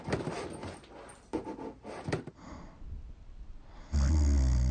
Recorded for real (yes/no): yes